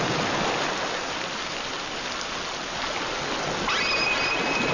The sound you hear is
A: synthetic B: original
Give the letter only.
B